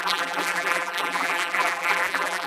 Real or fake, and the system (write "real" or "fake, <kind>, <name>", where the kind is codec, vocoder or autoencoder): fake, vocoder, BigVGAN v2